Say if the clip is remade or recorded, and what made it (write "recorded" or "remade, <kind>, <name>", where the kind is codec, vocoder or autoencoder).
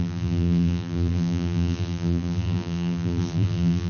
remade, vocoder, BigVGAN v2